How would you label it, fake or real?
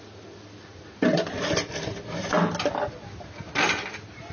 real